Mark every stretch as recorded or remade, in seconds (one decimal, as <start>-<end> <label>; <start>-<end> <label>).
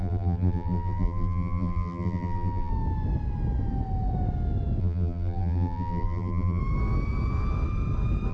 0.0-2.7 remade; 2.7-4.8 recorded; 4.8-6.6 remade; 6.6-8.3 recorded